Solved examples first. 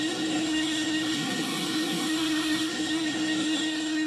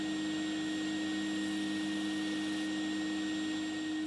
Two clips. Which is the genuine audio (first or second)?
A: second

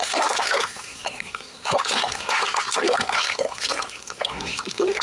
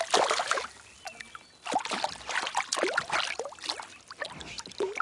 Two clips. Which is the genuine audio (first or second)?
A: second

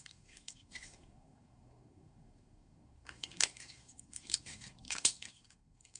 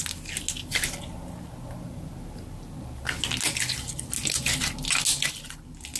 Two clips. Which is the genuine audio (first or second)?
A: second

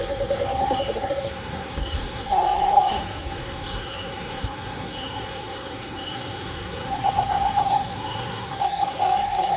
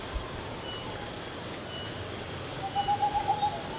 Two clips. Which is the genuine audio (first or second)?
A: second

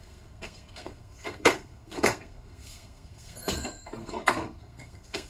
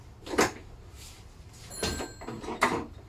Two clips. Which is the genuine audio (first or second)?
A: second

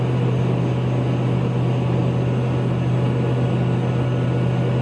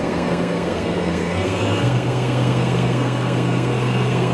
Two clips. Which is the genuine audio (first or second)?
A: first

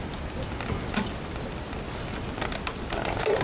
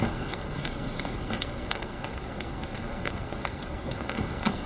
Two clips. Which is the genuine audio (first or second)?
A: first